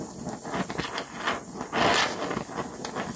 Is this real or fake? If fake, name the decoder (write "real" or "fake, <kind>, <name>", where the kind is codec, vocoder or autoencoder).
real